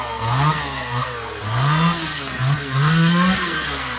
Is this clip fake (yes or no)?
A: yes